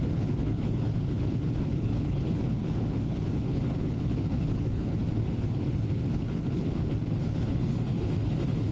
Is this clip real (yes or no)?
no